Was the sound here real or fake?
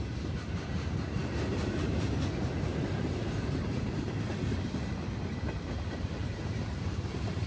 fake